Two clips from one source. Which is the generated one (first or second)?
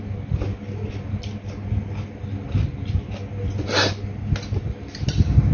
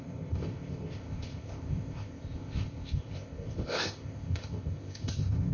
second